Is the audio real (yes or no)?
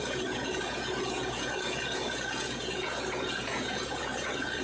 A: no